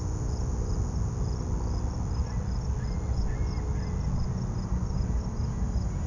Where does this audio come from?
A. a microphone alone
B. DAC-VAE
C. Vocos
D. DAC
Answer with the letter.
A